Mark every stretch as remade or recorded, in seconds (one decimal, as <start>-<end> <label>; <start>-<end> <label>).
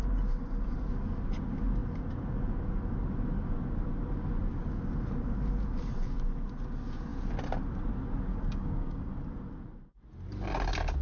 0.0-8.3 recorded; 8.3-9.1 remade; 9.1-11.0 recorded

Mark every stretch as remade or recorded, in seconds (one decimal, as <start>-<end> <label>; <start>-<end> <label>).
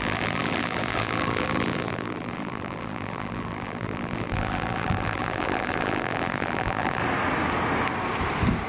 0.0-7.0 remade; 7.0-8.7 recorded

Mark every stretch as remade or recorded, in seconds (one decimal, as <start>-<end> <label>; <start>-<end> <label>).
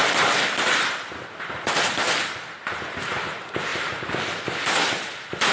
0.0-3.7 recorded; 3.7-4.4 remade; 4.4-5.5 recorded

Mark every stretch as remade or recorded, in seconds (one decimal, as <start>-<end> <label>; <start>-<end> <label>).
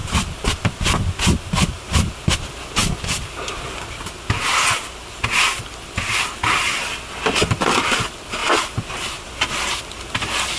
0.0-2.8 recorded; 2.8-3.5 remade; 3.5-8.4 recorded; 8.4-9.8 remade; 9.8-10.6 recorded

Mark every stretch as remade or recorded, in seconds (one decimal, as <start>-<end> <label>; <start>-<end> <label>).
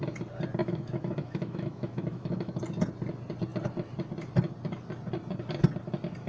0.0-0.6 recorded; 0.6-2.6 remade; 2.6-6.3 recorded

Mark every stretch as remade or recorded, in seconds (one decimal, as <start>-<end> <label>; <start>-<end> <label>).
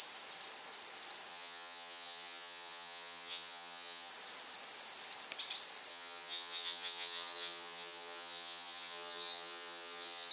0.0-1.3 recorded; 1.3-4.1 remade; 4.1-5.9 recorded; 5.9-10.3 remade